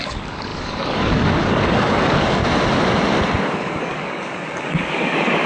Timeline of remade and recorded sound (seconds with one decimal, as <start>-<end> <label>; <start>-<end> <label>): 0.0-2.4 remade; 2.4-3.4 recorded; 3.4-5.5 remade